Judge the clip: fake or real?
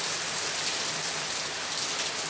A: real